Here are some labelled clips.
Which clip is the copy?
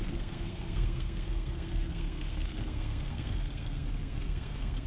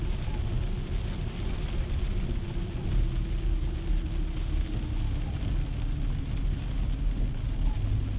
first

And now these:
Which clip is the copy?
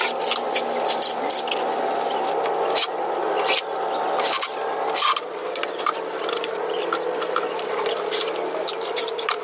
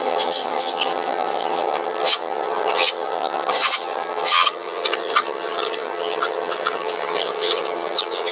second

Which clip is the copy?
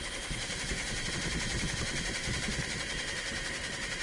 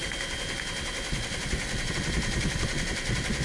first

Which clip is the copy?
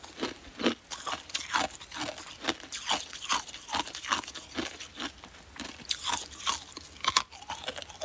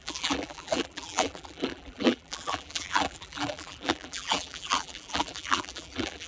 second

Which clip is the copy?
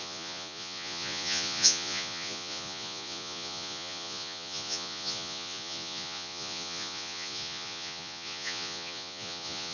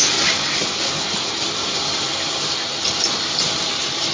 first